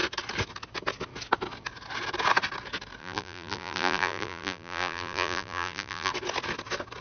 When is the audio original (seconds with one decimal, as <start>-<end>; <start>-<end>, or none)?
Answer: 0.0-3.0; 6.1-7.0